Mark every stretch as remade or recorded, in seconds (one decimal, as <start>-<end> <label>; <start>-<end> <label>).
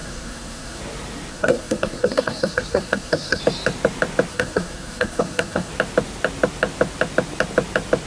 0.0-0.8 remade; 0.8-1.3 recorded; 1.3-3.4 remade; 3.4-4.3 recorded; 4.3-5.7 remade; 5.7-8.1 recorded